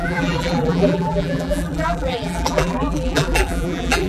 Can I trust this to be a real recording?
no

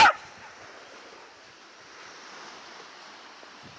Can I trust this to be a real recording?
yes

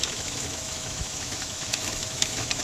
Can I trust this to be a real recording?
no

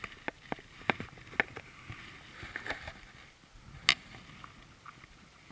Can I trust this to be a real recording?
yes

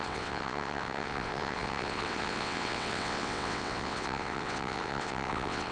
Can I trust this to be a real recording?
no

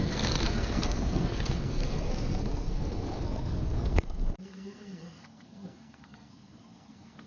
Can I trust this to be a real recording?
no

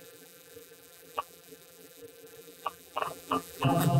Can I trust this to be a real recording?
no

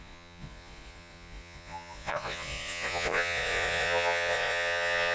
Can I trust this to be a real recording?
no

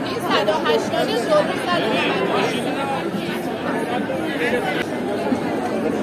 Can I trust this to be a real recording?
yes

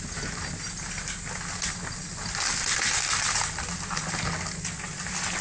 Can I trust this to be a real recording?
yes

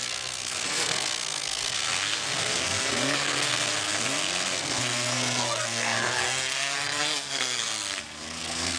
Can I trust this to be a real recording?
no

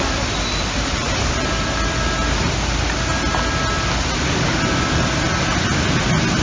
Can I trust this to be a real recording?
yes